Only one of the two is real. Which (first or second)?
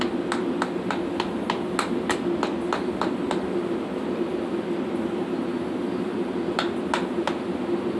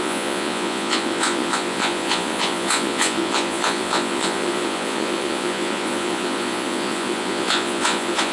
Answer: first